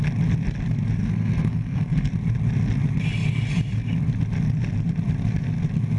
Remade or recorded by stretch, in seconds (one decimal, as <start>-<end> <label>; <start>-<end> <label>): 0.0-1.0 recorded; 1.0-2.1 remade; 2.1-6.0 recorded